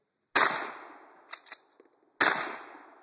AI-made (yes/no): no